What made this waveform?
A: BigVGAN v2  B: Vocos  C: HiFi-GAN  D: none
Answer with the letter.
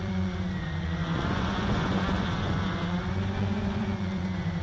B